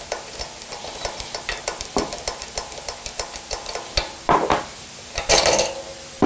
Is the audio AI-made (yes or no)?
no